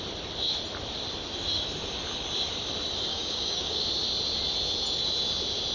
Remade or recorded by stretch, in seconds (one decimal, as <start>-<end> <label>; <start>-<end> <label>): 0.0-3.1 recorded; 3.1-3.8 remade; 3.8-5.7 recorded